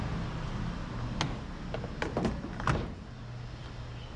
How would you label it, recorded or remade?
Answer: recorded